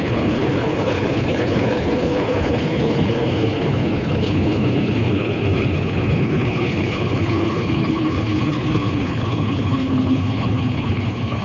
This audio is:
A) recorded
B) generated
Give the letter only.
B